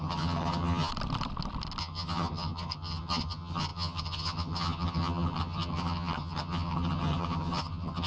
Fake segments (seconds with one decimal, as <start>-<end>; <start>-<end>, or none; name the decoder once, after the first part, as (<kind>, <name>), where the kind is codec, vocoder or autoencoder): 0.0-0.9 (vocoder, HiFi-GAN); 1.8-8.1